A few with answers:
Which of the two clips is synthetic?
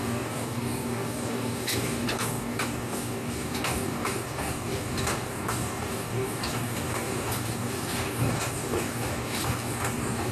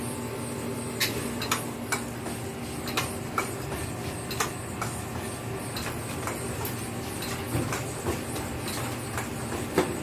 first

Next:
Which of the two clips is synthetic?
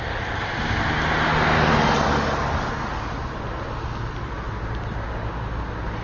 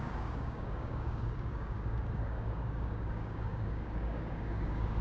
second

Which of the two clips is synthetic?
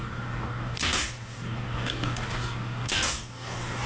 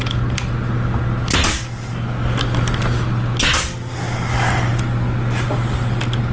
first